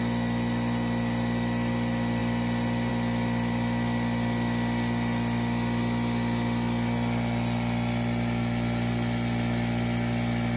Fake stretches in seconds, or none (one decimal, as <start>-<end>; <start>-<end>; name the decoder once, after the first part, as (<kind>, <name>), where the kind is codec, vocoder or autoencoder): none